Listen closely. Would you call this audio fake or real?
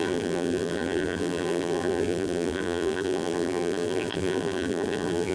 fake